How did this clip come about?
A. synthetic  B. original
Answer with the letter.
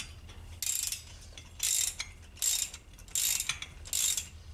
B